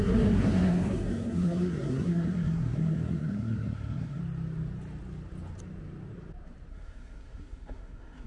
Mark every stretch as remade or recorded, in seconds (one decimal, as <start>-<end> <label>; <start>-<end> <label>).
0.0-4.2 remade; 4.2-6.7 recorded; 6.7-8.3 remade